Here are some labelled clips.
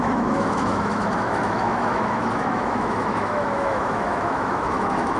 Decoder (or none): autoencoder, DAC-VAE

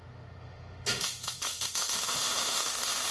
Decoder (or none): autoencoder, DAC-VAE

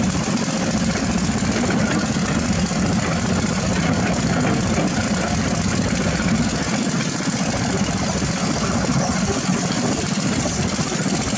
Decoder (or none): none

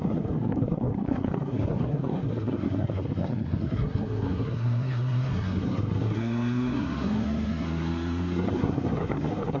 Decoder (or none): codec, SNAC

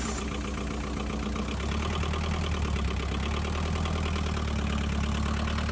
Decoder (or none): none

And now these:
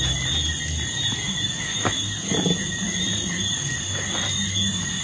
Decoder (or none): none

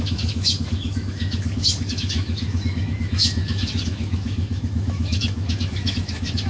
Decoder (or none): autoencoder, DAC-VAE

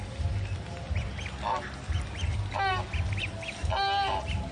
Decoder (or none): none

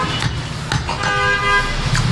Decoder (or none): none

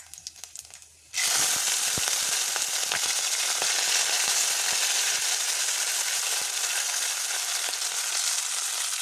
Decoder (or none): none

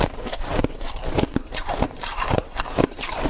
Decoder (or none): vocoder, BigVGAN v2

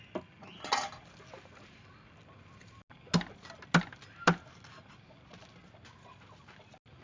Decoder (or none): none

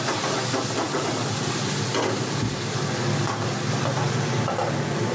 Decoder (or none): none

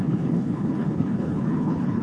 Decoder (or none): codec, HILCodec